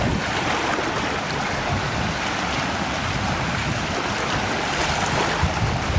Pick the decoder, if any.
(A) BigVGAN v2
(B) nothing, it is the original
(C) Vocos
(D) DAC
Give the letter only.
B